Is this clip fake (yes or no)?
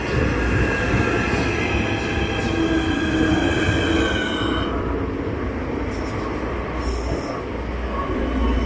no